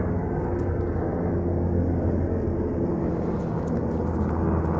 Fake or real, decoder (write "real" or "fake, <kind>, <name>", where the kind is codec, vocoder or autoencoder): real